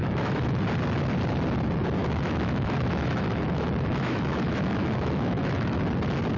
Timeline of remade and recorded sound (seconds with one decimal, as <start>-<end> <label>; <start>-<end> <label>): 0.0-0.6 remade; 0.6-2.0 recorded; 2.0-5.8 remade; 5.8-6.4 recorded